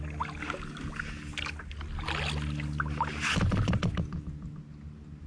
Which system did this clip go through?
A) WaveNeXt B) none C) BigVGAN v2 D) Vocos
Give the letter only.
B